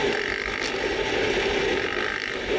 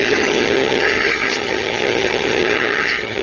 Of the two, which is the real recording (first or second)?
first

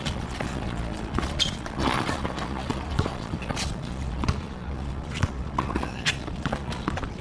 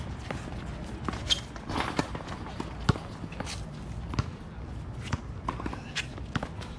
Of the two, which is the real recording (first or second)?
second